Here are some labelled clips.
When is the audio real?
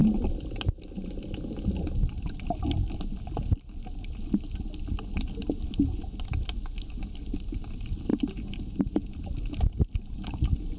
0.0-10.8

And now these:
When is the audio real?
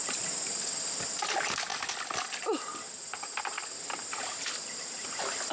0.5-5.5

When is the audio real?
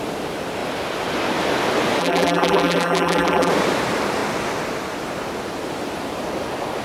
0.0-2.0; 3.5-6.8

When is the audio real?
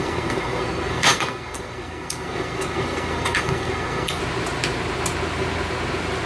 4.2-6.3